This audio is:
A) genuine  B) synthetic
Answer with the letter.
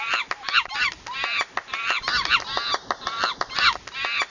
A